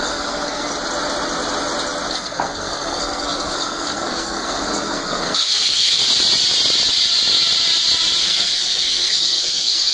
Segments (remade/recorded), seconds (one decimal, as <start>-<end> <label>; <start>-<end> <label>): 0.0-0.7 remade; 0.7-2.1 recorded; 2.1-6.0 remade; 6.0-8.2 recorded; 8.2-9.9 remade